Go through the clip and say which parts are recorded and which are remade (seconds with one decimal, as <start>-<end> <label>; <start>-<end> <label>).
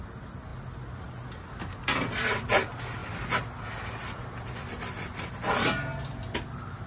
0.0-6.9 recorded